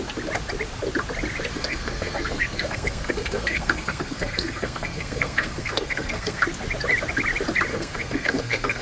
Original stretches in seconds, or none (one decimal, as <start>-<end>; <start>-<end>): 0.0-1.5; 6.4-7.7